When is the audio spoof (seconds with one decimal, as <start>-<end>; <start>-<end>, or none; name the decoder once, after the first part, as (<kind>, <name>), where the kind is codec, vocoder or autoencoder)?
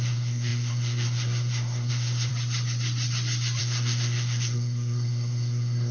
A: 0.0-2.3 (codec, SNAC); 3.6-5.9